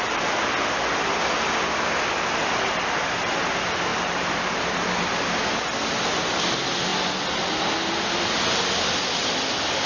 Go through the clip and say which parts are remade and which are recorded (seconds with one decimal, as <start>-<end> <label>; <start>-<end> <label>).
0.0-9.9 recorded